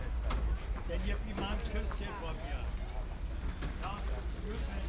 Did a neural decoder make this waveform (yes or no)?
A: no